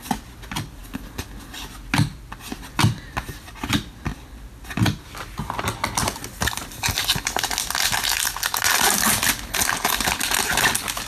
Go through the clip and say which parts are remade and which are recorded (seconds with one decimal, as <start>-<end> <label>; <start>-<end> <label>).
0.0-11.1 recorded